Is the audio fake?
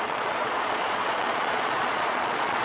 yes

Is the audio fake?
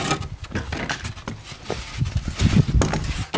no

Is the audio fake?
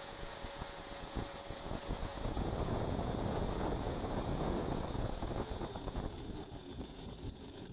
yes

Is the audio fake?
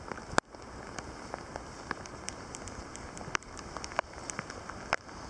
no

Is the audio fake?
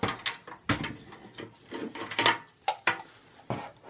no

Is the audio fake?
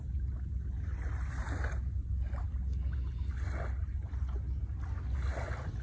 no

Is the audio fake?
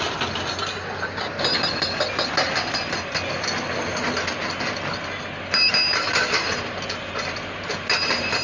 no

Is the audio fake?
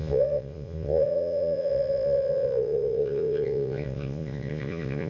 yes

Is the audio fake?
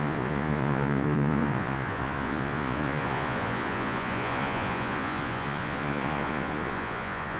yes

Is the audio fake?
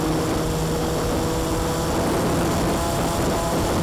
no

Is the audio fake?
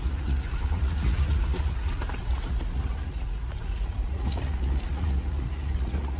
yes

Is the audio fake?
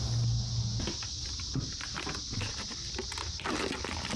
no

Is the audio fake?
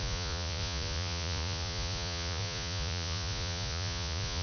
yes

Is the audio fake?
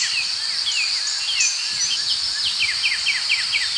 no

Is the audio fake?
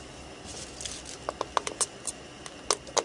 no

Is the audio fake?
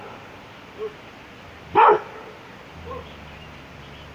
no